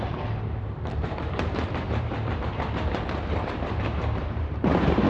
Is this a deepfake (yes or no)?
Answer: yes